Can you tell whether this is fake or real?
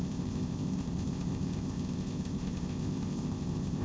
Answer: fake